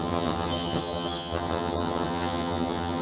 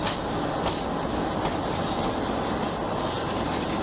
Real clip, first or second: second